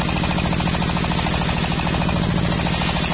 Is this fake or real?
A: real